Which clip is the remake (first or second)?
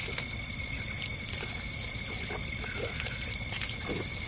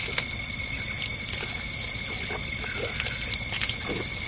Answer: first